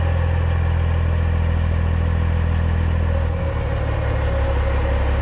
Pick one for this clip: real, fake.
real